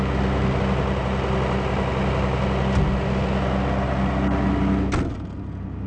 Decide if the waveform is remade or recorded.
recorded